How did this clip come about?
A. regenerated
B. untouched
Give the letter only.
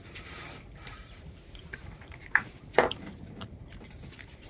A